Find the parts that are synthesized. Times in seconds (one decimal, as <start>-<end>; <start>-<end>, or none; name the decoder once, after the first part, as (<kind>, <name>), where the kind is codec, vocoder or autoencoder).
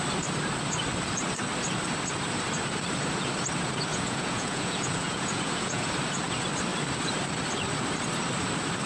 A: 3.9-5.9 (vocoder, Vocos)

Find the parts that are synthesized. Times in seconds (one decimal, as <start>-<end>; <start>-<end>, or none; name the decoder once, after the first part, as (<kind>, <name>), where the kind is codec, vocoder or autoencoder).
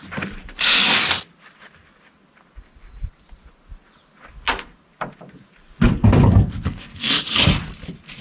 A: 6.3-7.2 (codec, SNAC)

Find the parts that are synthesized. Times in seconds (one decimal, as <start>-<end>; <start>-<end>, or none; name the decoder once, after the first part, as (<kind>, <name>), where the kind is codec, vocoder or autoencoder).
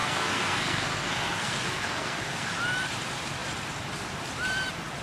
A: 0.0-2.6 (codec, SNAC)